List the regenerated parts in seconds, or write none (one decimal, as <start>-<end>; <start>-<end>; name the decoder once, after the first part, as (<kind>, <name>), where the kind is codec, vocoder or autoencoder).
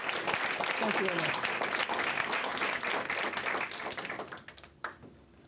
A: 2.5-4.8 (vocoder, BigVGAN v2)